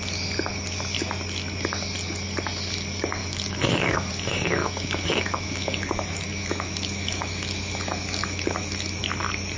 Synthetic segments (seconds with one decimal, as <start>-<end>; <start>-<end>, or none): 3.2-4.1; 4.6-9.0